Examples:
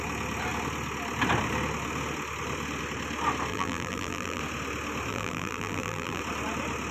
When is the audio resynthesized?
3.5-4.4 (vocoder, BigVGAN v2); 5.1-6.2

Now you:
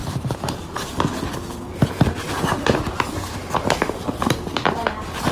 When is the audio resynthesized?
0.0-0.6 (vocoder, BigVGAN v2)

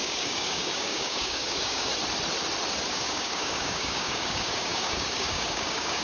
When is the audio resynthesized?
0.0-1.9 (codec, DAC); 2.9-6.0

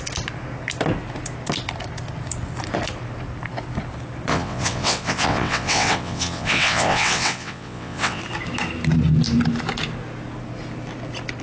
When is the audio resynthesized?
4.3-8.2 (vocoder, WaveNeXt)